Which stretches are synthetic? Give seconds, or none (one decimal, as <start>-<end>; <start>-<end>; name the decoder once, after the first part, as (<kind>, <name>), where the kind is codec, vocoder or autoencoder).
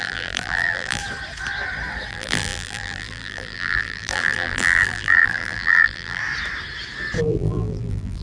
0.0-1.0 (vocoder, BigVGAN v2); 2.1-6.2; 7.2-8.2